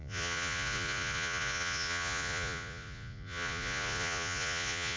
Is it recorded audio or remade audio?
remade